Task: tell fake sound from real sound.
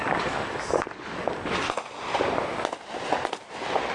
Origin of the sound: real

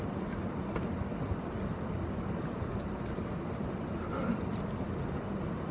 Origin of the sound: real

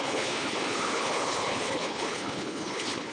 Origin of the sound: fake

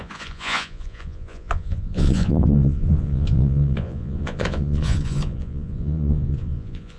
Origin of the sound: fake